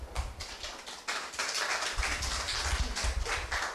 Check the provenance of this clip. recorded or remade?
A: recorded